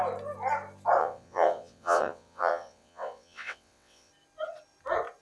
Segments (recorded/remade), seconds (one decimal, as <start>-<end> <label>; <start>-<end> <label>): 0.0-1.0 recorded; 1.0-4.1 remade; 4.1-5.2 recorded